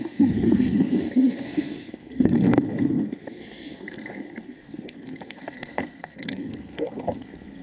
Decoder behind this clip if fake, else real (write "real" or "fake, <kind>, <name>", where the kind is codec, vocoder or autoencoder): fake, codec, SNAC